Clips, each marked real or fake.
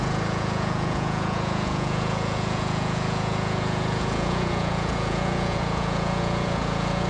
fake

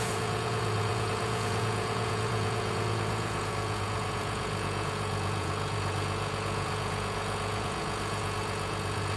fake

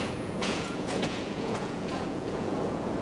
fake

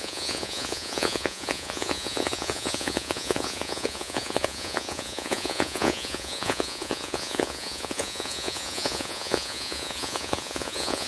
fake